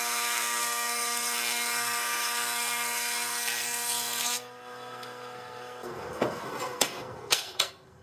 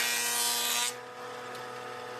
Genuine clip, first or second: second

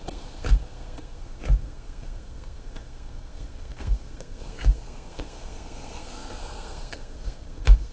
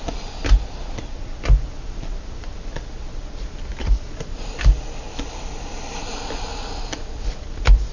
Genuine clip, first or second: second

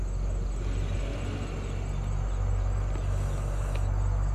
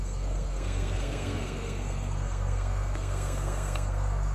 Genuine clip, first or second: first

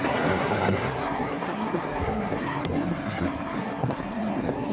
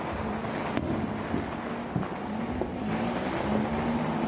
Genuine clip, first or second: second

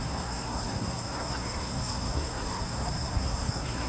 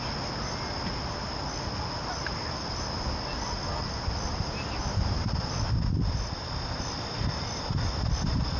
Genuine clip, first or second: second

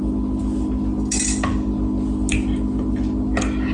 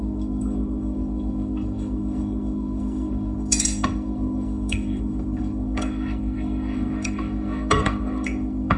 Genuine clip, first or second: first